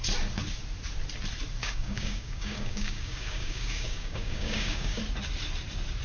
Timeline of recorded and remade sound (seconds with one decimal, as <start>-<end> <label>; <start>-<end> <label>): 0.0-1.6 recorded; 1.6-5.0 remade; 5.0-6.0 recorded